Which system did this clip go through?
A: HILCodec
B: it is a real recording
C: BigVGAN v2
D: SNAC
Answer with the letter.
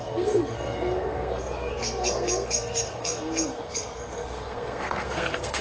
D